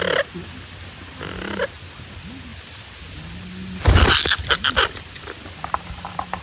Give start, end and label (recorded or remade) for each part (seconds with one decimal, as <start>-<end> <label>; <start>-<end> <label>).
0.0-2.5 recorded; 2.5-6.4 remade